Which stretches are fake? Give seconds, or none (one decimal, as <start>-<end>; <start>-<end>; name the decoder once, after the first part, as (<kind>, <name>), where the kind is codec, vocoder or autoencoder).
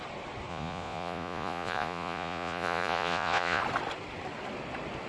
0.5-3.6 (vocoder, Vocos)